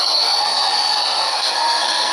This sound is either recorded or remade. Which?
remade